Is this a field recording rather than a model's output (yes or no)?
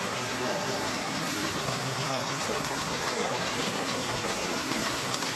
no